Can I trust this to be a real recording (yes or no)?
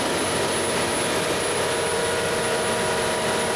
yes